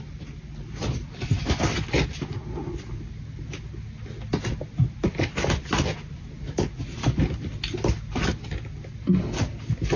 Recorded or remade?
recorded